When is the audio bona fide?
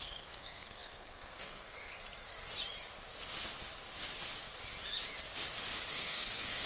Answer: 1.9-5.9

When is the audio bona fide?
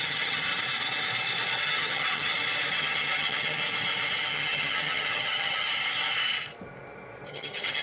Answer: 0.5-1.6; 2.3-2.8; 3.6-4.3; 5.7-7.3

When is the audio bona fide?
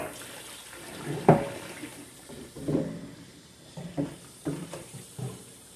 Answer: 0.0-0.6; 1.2-1.9